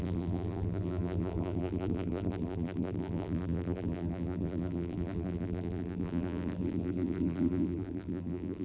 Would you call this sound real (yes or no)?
no